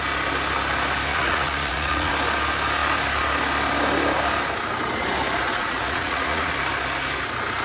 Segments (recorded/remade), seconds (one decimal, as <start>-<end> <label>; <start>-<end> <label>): 0.0-1.1 recorded; 1.1-2.1 remade; 2.1-5.5 recorded; 5.5-6.5 remade; 6.5-7.6 recorded